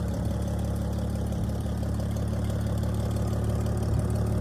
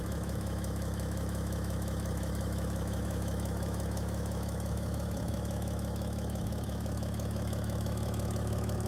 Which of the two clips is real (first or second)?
first